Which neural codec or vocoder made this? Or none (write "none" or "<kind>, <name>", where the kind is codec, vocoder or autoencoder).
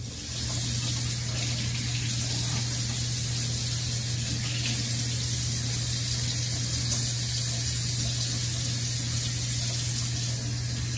none